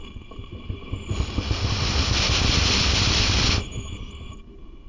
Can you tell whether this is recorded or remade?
recorded